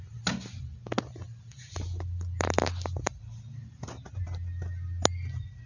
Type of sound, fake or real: real